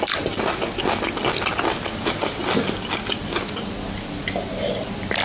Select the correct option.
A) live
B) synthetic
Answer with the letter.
A